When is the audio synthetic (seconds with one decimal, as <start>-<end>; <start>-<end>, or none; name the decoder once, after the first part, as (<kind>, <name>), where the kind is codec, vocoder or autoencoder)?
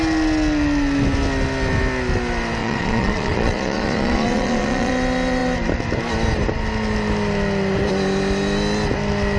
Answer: 2.6-4.9 (vocoder, Vocos)